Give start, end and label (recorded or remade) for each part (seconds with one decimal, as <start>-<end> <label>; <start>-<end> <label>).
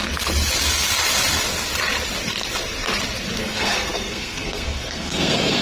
0.0-3.4 recorded; 3.4-5.6 remade